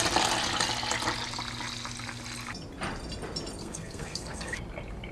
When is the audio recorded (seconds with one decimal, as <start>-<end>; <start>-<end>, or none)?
0.0-3.6; 4.6-5.1

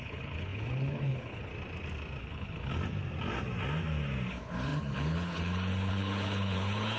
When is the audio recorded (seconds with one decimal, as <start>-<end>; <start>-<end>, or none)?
1.5-2.2; 2.7-4.3

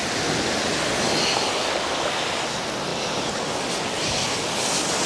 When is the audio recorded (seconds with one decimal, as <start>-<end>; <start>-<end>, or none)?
0.0-5.1